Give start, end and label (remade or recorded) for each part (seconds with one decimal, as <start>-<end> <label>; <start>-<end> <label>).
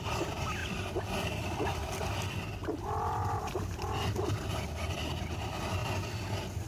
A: 0.0-6.7 recorded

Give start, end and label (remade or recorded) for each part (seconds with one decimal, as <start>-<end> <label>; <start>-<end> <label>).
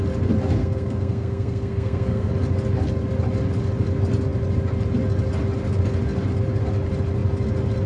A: 0.0-0.6 recorded; 0.6-2.3 remade; 2.3-7.9 recorded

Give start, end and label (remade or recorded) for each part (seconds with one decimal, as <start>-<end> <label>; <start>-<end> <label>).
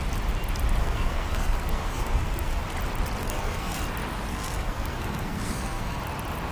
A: 0.0-0.8 recorded; 0.8-2.6 remade; 2.6-3.2 recorded; 3.2-3.8 remade; 3.8-4.3 recorded; 4.3-6.0 remade; 6.0-6.5 recorded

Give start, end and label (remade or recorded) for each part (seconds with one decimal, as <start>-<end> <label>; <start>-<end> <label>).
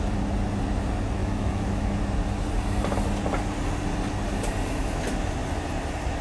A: 0.0-1.2 recorded; 1.2-2.0 remade; 2.0-6.2 recorded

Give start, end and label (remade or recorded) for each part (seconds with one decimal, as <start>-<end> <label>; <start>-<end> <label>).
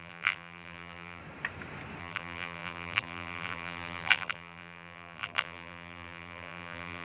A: 0.0-1.2 remade; 1.2-2.0 recorded; 2.0-7.0 remade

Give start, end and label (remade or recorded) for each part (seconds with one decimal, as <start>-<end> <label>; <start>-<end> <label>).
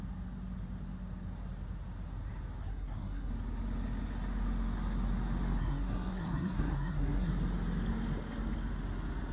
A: 0.0-2.6 recorded; 2.6-3.3 remade; 3.3-5.6 recorded; 5.6-7.3 remade; 7.3-9.3 recorded